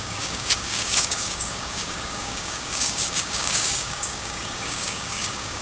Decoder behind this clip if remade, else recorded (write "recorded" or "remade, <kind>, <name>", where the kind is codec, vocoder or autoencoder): remade, codec, DAC